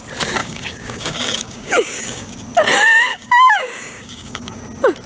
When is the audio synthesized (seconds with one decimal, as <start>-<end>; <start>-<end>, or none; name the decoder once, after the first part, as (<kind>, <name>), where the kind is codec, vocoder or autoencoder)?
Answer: 0.4-2.3 (codec, DAC); 3.1-4.6